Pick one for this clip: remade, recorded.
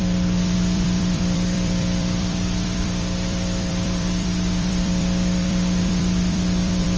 remade